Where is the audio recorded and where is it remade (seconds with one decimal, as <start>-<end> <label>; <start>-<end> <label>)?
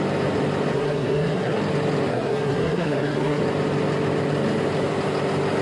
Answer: 0.0-0.7 recorded; 0.7-1.6 remade; 1.6-2.1 recorded; 2.1-3.4 remade; 3.4-5.6 recorded